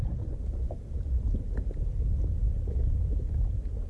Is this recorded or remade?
recorded